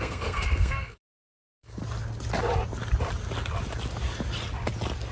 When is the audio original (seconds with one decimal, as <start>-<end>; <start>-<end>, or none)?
1.8-5.1